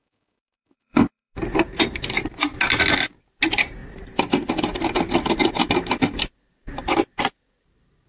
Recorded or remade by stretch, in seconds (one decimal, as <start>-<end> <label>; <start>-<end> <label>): 0.0-1.4 remade; 1.4-8.1 recorded